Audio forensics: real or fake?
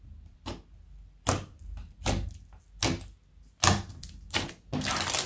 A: real